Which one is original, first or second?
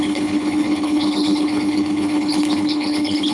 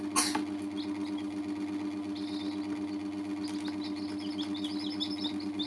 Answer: second